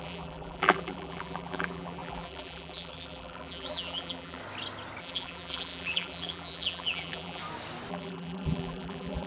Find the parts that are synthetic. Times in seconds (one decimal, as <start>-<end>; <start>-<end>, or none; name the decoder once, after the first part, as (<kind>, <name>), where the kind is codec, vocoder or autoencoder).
0.0-4.4 (vocoder, BigVGAN v2); 5.0-7.4; 7.9-9.3